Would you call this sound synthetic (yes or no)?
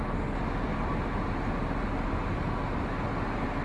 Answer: no